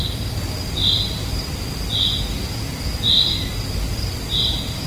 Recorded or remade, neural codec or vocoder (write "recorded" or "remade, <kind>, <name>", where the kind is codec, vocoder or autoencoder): remade, vocoder, BigVGAN v2